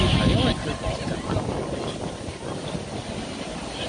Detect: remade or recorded recorded